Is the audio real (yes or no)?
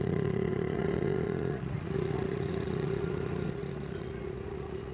no